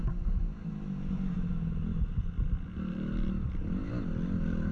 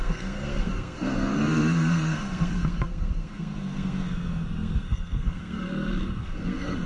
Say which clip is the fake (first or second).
second